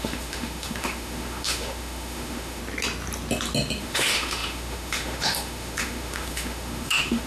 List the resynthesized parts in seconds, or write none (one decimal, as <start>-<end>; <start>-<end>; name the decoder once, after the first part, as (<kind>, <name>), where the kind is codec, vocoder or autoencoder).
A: 0.0-2.6 (autoencoder, DAC-VAE); 3.8-7.3